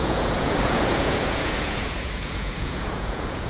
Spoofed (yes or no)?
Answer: yes